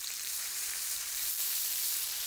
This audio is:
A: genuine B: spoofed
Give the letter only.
B